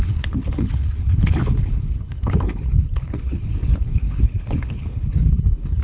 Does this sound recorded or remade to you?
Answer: remade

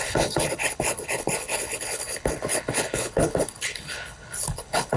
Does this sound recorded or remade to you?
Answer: remade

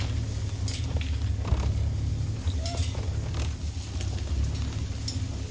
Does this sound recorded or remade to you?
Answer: recorded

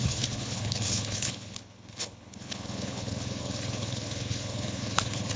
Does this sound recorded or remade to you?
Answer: remade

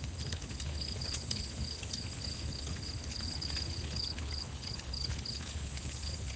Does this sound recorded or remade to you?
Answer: remade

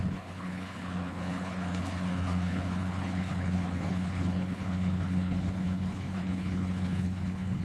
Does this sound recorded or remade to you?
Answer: remade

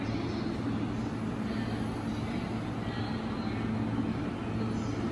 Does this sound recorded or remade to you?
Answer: recorded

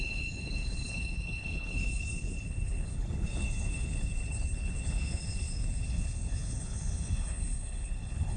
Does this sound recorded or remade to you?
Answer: remade